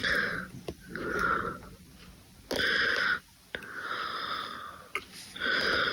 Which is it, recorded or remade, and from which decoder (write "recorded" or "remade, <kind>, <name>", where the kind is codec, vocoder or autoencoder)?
recorded